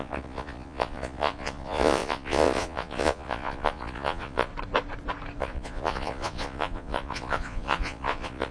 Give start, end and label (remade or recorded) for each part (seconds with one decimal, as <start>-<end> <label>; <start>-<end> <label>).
0.0-4.5 remade; 4.5-5.4 recorded; 5.4-8.5 remade